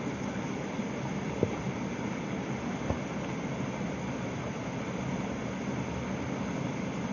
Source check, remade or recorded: recorded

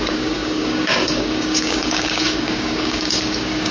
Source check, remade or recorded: remade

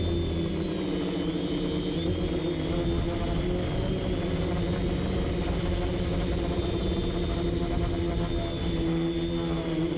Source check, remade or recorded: recorded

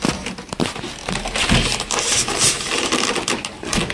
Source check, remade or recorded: recorded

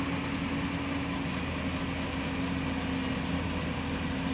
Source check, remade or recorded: recorded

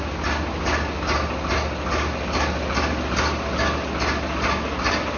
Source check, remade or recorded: recorded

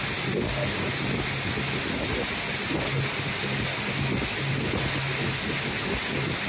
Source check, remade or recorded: recorded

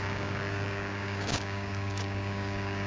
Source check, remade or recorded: remade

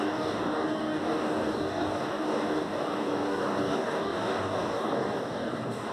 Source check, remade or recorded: remade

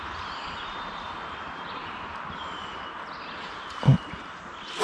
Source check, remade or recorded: recorded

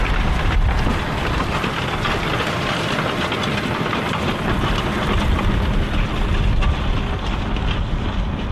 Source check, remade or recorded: recorded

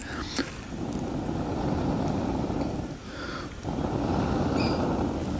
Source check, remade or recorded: recorded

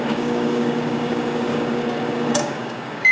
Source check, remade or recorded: remade